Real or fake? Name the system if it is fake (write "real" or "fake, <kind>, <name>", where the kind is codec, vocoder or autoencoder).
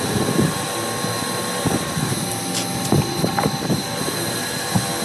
real